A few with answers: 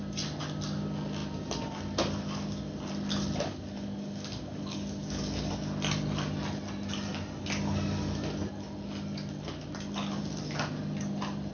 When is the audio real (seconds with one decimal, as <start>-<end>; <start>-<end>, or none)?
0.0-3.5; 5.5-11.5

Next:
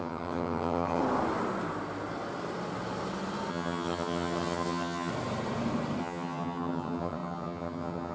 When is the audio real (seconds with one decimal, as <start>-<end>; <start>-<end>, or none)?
1.0-3.5; 5.1-6.0

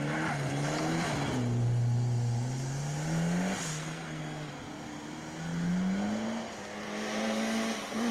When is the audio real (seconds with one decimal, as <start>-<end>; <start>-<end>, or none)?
0.0-3.7; 4.5-8.1